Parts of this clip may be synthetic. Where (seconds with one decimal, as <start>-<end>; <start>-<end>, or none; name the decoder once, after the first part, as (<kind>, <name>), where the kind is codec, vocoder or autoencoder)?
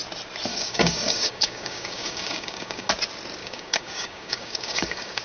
0.5-2.9 (codec, DAC); 3.4-5.2